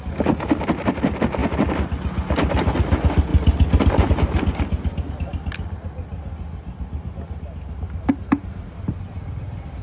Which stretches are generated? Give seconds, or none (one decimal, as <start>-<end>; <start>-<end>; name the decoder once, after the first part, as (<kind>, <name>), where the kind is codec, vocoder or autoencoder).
none